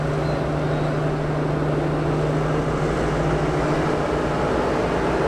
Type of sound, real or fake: real